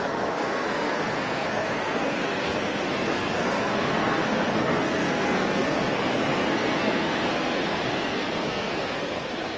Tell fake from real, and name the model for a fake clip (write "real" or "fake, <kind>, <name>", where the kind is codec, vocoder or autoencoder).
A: fake, codec, SNAC